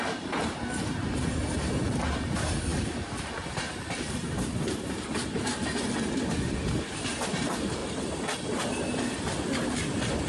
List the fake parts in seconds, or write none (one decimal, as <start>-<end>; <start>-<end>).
none

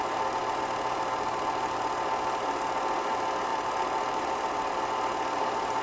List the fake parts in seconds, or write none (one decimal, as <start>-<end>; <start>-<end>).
3.5-4.7

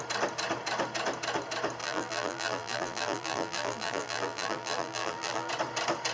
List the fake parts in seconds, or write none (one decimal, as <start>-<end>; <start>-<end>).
1.8-5.5

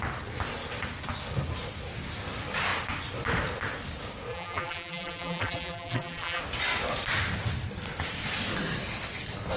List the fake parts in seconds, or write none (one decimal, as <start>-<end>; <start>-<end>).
4.3-6.4

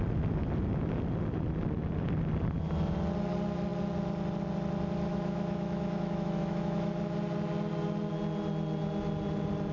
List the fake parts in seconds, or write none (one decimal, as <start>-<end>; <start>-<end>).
5.1-6.9

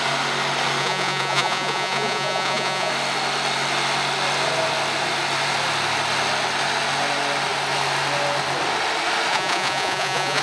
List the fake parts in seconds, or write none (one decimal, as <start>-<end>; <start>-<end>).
0.8-2.9; 9.3-10.4

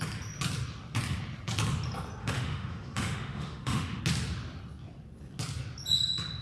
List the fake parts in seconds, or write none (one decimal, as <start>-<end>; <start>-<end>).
2.2-4.0

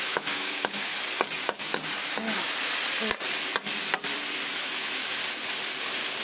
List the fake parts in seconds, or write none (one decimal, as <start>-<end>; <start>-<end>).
0.0-0.9; 4.6-5.2